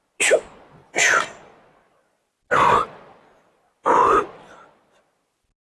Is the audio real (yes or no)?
yes